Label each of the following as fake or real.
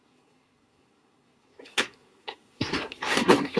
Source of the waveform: fake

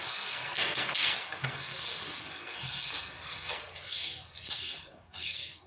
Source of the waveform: fake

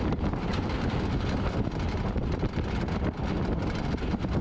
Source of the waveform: real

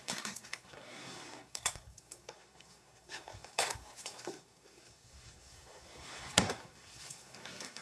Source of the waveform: fake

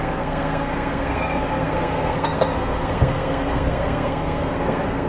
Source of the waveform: fake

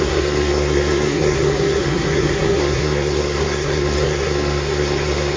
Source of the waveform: fake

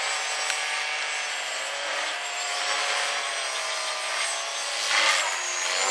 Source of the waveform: real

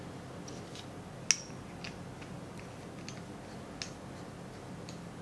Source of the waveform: real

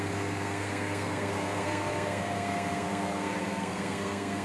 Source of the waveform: fake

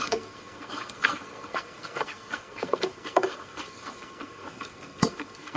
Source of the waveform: fake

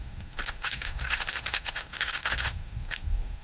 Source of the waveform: fake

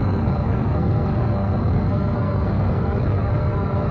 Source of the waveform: fake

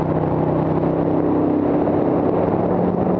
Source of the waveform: real